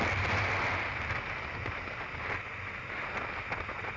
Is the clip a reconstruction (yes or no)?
no